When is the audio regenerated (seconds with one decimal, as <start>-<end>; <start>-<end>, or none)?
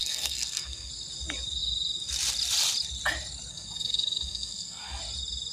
0.0-0.9; 3.5-5.0